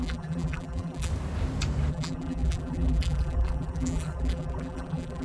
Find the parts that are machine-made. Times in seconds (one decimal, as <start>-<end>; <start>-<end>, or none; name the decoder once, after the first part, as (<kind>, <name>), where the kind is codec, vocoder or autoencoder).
0.0-1.1 (vocoder, BigVGAN v2); 1.9-5.2